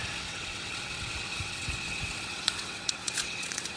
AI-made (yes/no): yes